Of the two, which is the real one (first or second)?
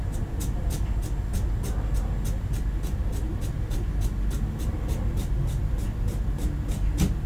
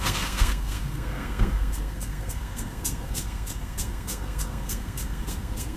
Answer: first